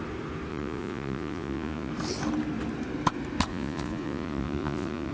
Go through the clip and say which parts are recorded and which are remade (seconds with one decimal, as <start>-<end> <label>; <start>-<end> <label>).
0.0-0.5 recorded; 0.5-1.9 remade; 1.9-3.5 recorded; 3.5-5.1 remade